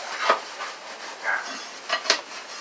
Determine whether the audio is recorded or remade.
recorded